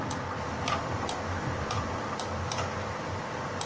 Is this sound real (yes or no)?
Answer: no